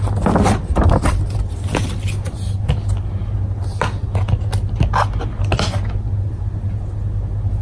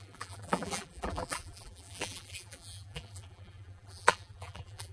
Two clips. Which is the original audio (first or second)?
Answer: first